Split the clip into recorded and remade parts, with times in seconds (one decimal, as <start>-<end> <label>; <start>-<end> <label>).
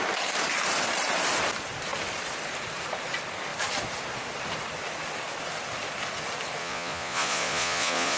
0.0-6.6 recorded; 6.6-8.2 remade